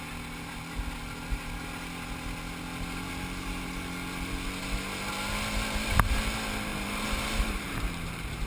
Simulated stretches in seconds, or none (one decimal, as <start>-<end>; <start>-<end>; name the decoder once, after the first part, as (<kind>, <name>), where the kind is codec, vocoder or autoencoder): 6.7-8.5 (vocoder, BigVGAN v2)

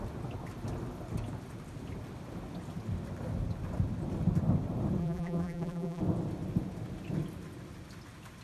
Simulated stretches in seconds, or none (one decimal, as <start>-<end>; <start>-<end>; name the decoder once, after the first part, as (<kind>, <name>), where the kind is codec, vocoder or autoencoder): 5.0-6.0 (vocoder, BigVGAN v2)

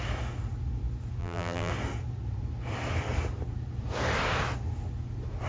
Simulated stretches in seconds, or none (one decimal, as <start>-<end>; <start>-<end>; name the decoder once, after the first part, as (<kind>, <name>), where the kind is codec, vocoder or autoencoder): 1.2-1.7 (vocoder, BigVGAN v2)

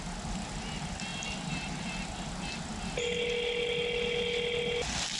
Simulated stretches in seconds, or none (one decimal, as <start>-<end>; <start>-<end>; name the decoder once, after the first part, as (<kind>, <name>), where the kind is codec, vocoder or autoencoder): none

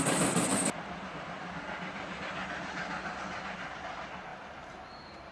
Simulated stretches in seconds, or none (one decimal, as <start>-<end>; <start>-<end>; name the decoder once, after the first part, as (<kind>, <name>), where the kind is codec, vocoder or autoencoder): 0.5-3.7 (vocoder, BigVGAN v2); 4.3-5.3

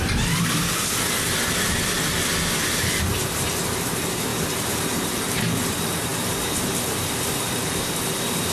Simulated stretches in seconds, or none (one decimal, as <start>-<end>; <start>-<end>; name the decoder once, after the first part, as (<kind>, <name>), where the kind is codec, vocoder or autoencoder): 4.3-5.4 (vocoder, BigVGAN v2)

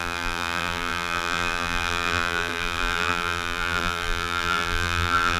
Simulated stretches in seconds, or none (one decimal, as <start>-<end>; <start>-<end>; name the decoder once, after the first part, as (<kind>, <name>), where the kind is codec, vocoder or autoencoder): 0.0-5.4 (vocoder, BigVGAN v2)